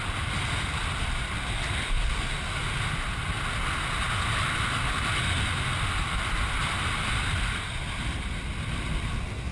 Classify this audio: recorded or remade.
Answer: recorded